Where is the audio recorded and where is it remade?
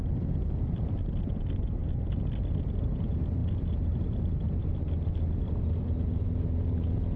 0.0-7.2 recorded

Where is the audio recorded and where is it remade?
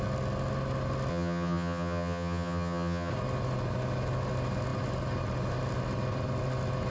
0.0-1.1 recorded; 1.1-3.1 remade; 3.1-6.9 recorded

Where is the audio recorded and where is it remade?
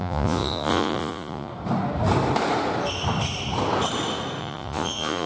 0.0-1.5 remade; 1.5-4.4 recorded; 4.4-5.3 remade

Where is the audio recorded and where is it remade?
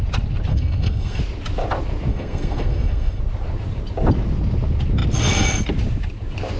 0.0-0.5 recorded; 0.5-1.2 remade; 1.2-2.1 recorded; 2.1-3.2 remade; 3.2-6.6 recorded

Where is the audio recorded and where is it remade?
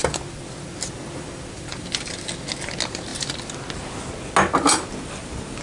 0.0-2.2 remade; 2.2-5.6 recorded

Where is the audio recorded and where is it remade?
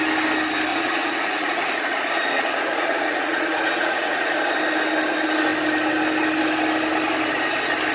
0.0-0.7 recorded; 0.7-4.3 remade; 4.3-7.9 recorded